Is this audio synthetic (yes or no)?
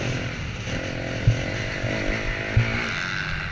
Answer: no